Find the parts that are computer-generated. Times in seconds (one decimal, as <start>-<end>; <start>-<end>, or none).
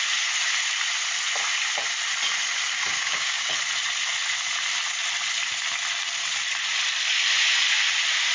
2.9-3.5